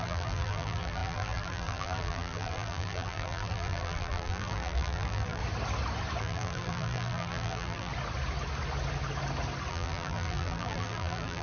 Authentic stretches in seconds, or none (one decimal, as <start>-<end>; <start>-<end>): 5.4-6.2; 7.9-9.7